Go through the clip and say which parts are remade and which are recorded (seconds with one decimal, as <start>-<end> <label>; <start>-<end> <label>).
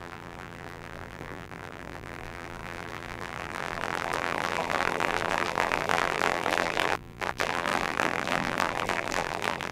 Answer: 0.0-9.7 remade